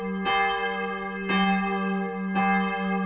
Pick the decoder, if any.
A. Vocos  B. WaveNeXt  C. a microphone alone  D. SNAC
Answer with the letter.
C